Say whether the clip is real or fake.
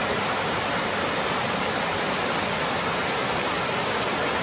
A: real